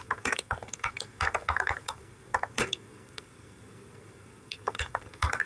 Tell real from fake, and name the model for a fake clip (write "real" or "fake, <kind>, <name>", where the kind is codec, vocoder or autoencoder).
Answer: fake, codec, SNAC